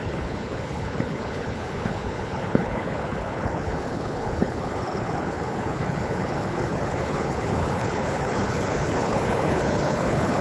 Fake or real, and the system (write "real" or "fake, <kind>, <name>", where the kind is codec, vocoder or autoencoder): fake, codec, HILCodec